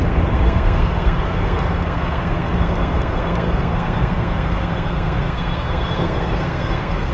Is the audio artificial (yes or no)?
yes